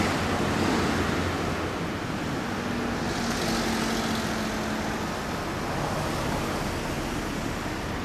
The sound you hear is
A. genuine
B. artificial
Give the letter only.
A